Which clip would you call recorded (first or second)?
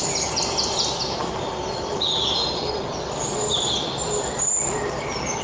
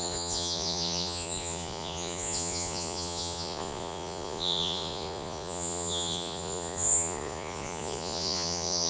first